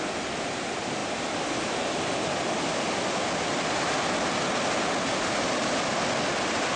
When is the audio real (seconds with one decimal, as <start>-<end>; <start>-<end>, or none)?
0.0-6.8